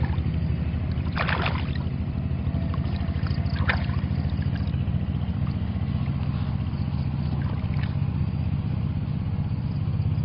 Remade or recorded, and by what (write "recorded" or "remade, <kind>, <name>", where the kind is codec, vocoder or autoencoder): recorded